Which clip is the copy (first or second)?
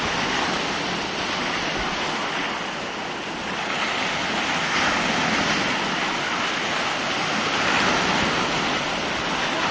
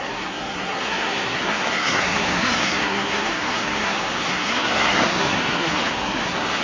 second